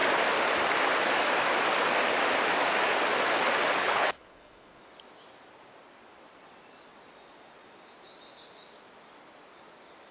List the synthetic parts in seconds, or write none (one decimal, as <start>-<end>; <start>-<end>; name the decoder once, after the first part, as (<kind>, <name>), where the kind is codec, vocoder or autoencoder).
3.8-4.8 (codec, HILCodec)